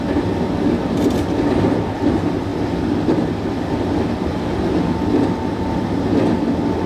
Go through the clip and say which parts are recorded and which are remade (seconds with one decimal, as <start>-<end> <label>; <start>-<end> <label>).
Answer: 0.0-6.9 recorded